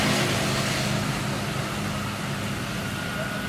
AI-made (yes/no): no